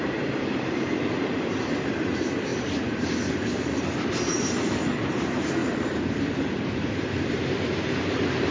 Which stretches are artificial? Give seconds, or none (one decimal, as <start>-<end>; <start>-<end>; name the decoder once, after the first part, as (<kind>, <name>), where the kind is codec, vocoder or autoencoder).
0.0-8.5 (vocoder, BigVGAN v2)